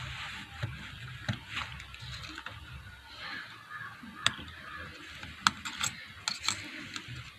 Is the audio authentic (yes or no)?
yes